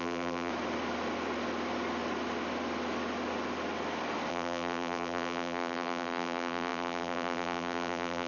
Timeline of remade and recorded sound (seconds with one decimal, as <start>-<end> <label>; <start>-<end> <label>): 0.0-0.5 remade; 0.5-4.3 recorded; 4.3-8.3 remade